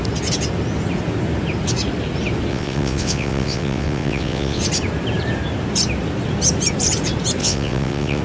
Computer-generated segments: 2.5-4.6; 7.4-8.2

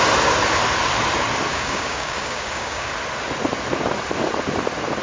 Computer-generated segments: 1.5-2.9